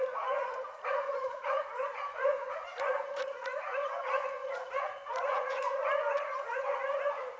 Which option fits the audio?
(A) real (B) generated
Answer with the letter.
B